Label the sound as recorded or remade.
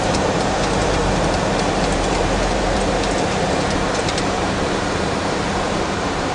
remade